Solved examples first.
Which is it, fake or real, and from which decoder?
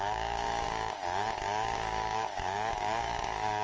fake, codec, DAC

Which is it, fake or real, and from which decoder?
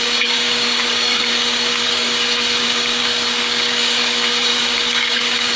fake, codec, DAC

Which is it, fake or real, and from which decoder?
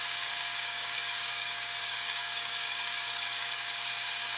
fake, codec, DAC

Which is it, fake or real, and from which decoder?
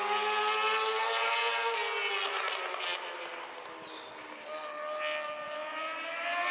real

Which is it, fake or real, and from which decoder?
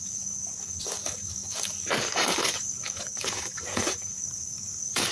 fake, codec, DAC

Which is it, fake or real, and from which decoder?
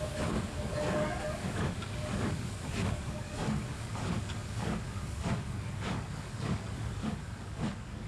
fake, codec, DAC